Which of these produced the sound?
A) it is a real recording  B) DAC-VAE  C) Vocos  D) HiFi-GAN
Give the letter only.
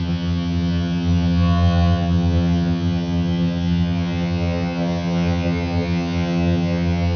D